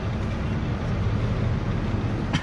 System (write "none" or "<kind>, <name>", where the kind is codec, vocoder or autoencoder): none